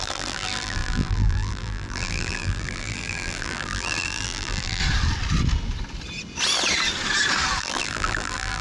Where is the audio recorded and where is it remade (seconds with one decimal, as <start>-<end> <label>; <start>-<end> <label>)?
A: 0.0-4.8 remade; 4.8-7.6 recorded; 7.6-8.6 remade